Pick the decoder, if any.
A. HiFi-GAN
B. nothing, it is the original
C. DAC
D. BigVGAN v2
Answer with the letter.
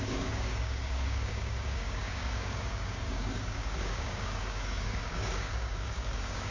C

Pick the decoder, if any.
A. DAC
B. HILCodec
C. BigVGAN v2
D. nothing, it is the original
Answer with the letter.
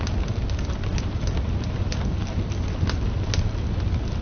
D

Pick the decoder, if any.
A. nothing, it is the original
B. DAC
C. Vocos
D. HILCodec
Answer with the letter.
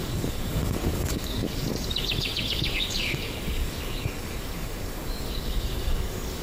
B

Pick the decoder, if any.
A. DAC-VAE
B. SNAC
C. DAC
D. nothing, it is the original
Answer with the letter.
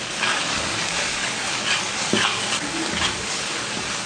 C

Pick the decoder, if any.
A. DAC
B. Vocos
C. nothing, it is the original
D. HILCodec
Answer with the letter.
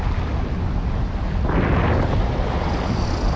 C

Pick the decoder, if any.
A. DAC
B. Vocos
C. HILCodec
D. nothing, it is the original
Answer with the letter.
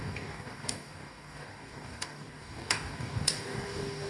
A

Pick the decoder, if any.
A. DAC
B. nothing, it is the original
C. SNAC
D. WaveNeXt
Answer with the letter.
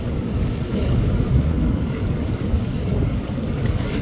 A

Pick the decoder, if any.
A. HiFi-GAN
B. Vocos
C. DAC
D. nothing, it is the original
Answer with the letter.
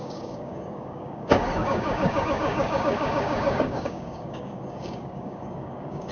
C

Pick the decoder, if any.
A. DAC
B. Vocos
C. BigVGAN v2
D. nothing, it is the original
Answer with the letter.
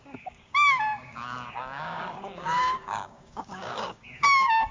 A